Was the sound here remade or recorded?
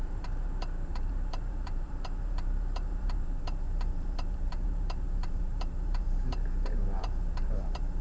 remade